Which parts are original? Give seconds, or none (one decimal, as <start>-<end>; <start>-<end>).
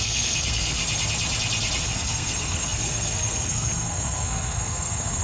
0.8-1.8